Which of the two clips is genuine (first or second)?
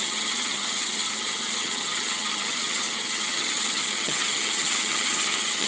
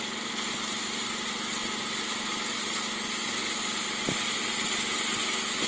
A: second